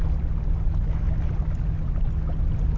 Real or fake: real